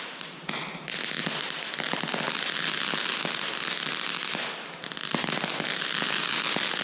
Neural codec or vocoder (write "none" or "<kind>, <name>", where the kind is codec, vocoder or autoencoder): none